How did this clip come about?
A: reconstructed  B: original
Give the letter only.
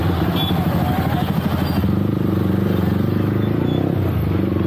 B